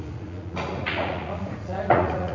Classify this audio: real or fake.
fake